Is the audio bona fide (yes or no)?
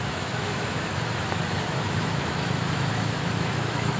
no